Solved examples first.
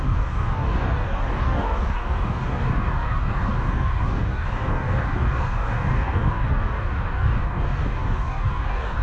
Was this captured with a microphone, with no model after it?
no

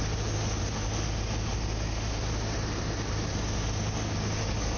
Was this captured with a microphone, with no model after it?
yes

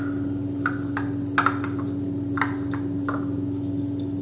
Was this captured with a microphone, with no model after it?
yes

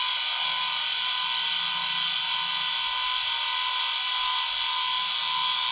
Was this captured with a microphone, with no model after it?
yes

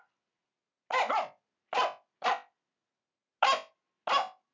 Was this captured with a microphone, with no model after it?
yes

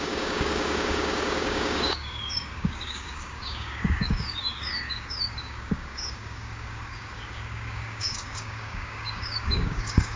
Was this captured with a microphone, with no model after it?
no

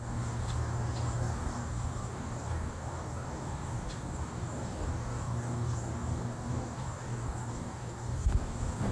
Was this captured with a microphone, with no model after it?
no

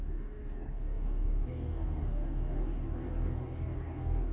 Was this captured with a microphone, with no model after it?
no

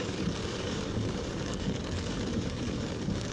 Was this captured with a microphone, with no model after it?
no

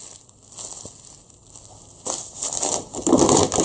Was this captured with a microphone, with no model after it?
yes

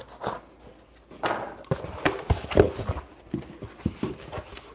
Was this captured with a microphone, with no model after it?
yes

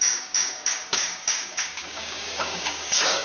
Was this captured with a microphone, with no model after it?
no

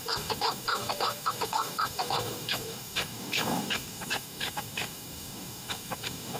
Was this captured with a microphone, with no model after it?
no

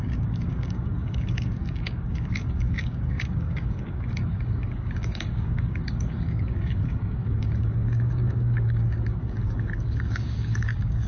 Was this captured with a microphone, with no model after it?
no